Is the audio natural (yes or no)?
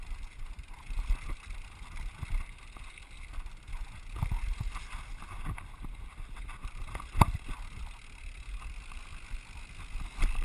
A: yes